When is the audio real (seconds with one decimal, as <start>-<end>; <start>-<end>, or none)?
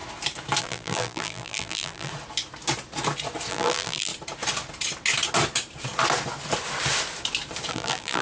0.0-0.6; 2.1-3.5; 4.1-7.7